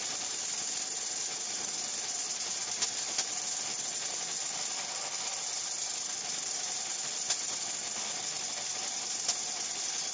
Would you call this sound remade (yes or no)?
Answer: no